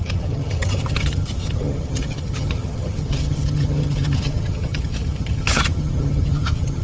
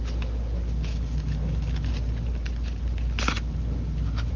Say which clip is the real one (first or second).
second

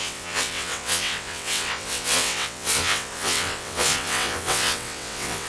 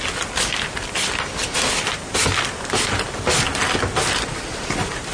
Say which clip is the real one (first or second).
second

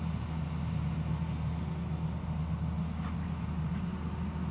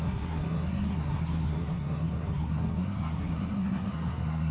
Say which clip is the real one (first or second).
first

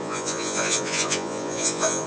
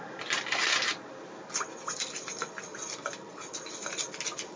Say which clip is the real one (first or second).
second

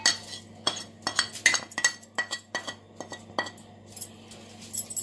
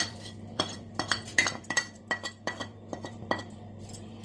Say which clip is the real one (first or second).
first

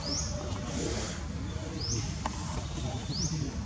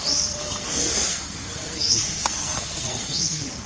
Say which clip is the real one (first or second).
first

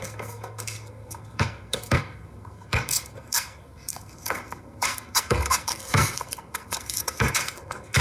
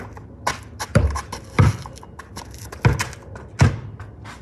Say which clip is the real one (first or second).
second